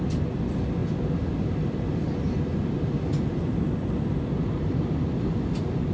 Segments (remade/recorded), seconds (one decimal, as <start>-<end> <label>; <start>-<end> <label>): 0.0-5.9 recorded